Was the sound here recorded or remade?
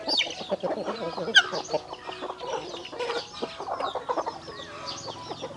recorded